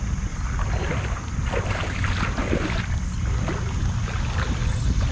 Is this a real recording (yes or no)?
yes